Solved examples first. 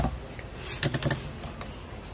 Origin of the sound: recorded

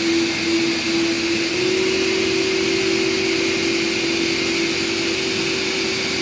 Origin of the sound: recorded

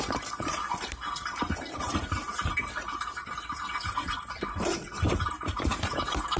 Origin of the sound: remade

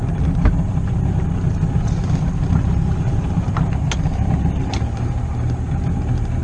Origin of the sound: recorded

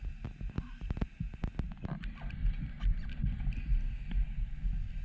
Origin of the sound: recorded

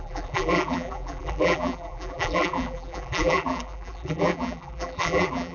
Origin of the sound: remade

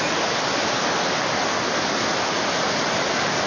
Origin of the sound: recorded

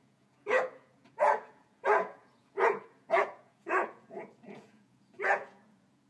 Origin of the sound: remade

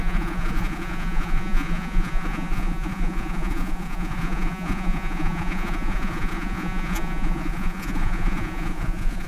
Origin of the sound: remade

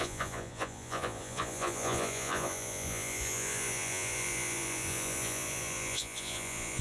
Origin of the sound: remade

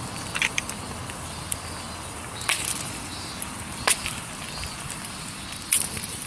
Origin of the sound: remade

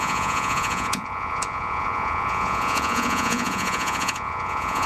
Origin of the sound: remade